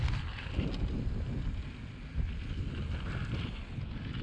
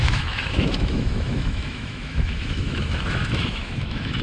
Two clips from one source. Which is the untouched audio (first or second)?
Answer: first